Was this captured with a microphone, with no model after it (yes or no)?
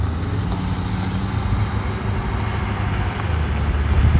yes